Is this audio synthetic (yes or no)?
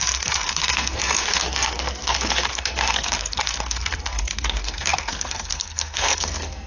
yes